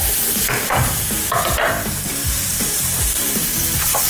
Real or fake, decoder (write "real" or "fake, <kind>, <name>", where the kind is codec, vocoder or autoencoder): fake, vocoder, BigVGAN v2